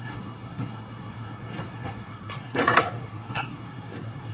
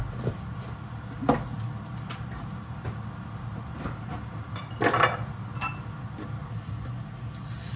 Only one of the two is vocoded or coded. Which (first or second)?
first